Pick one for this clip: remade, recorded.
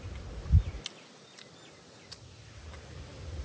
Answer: recorded